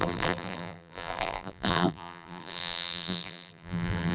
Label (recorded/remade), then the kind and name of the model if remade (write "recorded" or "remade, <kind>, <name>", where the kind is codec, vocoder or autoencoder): remade, vocoder, BigVGAN v2